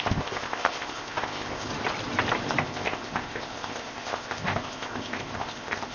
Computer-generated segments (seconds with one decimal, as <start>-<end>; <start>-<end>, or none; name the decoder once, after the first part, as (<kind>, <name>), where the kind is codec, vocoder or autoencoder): 0.0-1.7 (codec, ZipCodec); 2.6-5.9